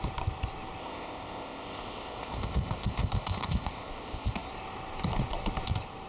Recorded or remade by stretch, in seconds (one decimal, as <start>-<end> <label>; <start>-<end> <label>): 0.0-0.8 recorded; 0.8-4.5 remade; 4.5-6.1 recorded